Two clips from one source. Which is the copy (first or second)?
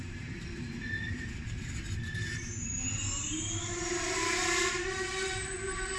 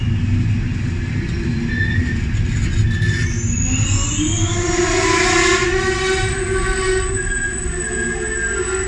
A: first